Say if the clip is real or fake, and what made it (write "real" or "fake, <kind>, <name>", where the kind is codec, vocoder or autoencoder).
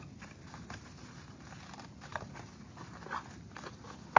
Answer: real